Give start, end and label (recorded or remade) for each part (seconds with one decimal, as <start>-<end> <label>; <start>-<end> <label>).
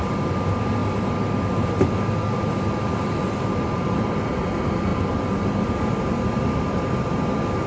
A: 0.0-7.7 recorded